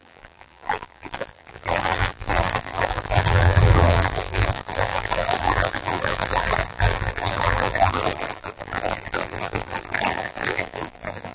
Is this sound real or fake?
fake